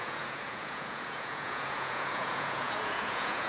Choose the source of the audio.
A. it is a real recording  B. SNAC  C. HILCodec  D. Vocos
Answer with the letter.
D